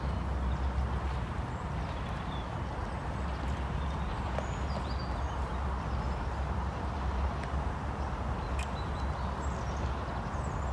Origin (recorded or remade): recorded